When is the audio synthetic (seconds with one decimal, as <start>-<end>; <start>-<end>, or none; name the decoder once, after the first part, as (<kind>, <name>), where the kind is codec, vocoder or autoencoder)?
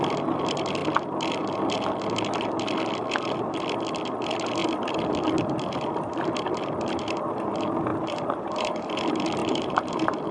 7.9-8.9 (vocoder, BigVGAN v2); 9.4-10.3